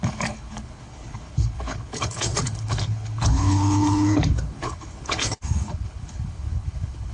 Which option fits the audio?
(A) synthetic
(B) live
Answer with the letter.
A